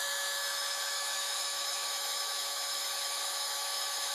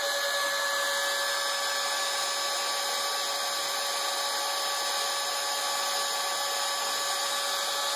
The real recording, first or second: second